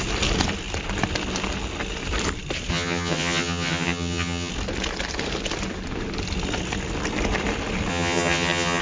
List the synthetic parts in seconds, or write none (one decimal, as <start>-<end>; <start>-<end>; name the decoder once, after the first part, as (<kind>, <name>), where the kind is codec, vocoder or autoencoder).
2.7-4.5 (vocoder, HiFi-GAN); 7.9-8.8